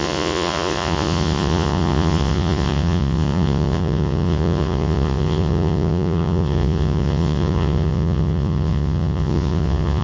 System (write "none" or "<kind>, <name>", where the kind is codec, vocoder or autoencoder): vocoder, Vocos